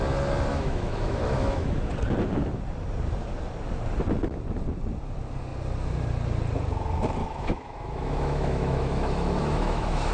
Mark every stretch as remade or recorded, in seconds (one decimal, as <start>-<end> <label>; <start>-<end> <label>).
0.0-0.5 recorded; 0.5-1.9 remade; 1.9-7.2 recorded; 7.2-10.1 remade